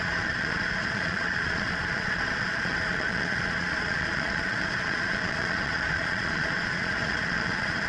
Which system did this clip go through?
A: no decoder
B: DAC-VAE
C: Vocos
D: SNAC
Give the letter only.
C